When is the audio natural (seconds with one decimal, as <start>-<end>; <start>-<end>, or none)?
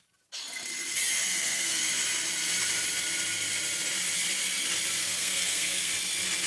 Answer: 0.0-1.3; 1.8-5.0; 5.9-6.5